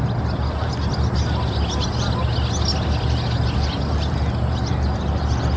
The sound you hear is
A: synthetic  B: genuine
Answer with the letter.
B